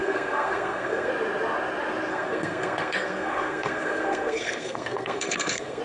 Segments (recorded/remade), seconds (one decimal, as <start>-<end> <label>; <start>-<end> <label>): 0.0-1.1 remade; 1.1-2.1 recorded; 2.1-5.8 remade